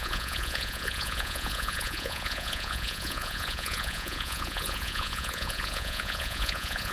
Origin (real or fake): fake